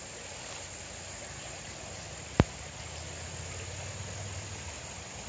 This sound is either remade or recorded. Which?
recorded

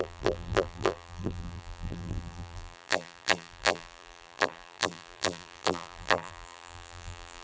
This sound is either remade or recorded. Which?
remade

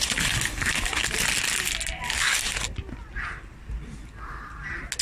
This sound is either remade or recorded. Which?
recorded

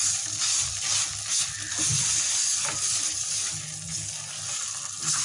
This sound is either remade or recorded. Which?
recorded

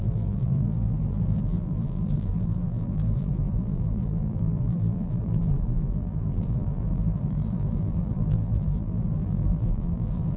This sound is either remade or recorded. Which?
remade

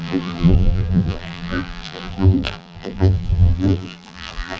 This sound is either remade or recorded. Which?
remade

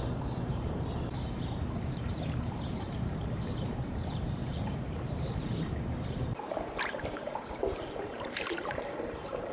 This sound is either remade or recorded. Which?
remade